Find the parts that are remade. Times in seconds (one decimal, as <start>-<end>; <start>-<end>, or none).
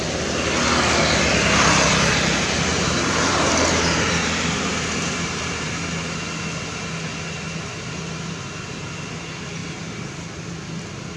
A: 2.7-5.7